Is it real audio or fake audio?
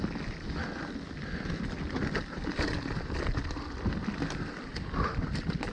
real